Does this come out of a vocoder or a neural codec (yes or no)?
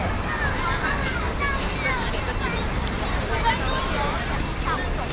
no